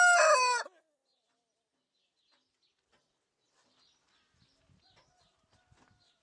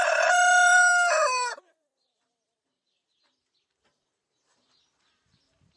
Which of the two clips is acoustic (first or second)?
first